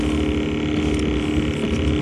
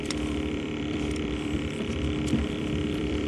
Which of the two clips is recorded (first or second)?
first